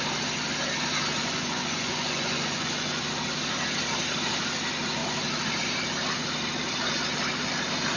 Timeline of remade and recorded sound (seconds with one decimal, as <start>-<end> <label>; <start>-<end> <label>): 0.0-1.2 recorded; 1.2-3.0 remade; 3.0-8.0 recorded